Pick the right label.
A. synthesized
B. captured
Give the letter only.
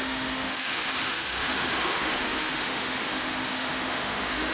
A